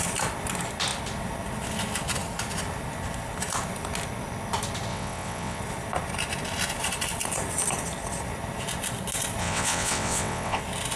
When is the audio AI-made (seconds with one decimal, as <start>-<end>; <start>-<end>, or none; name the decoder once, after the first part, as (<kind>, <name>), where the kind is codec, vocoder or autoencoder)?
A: 4.9-5.6 (vocoder, WaveNeXt); 9.4-10.6